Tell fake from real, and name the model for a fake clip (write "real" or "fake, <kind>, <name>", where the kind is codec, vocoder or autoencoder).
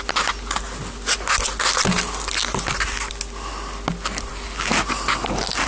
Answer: real